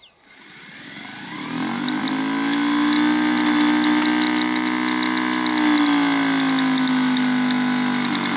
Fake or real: real